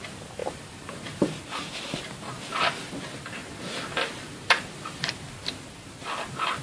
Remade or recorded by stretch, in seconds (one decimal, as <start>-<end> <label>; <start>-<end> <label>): 0.0-0.4 recorded; 0.4-1.4 remade; 1.4-3.4 recorded; 3.4-5.1 remade; 5.1-6.6 recorded